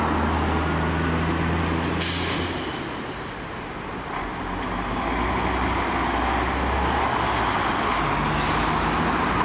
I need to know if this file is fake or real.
real